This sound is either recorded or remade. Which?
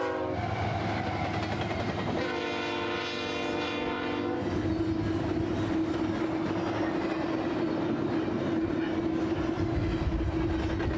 recorded